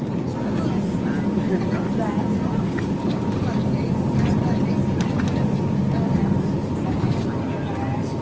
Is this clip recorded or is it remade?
recorded